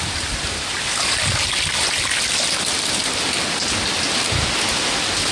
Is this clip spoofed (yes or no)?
no